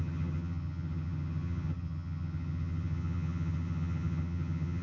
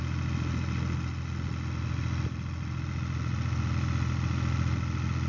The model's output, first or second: first